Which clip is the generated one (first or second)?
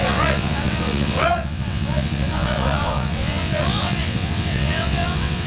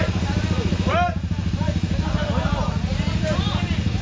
first